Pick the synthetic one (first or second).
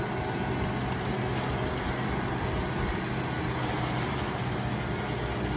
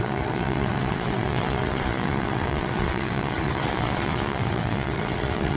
second